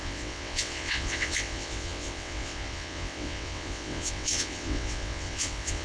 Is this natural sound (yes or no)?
no